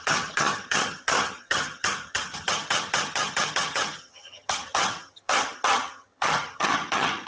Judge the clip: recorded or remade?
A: remade